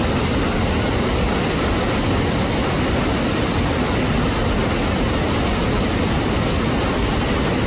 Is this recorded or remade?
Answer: recorded